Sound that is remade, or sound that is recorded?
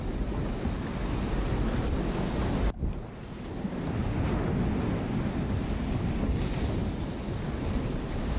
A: recorded